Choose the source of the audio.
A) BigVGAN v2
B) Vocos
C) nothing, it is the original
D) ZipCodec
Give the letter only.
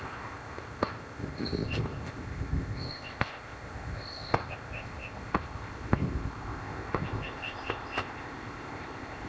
D